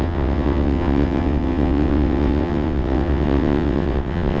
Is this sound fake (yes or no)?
yes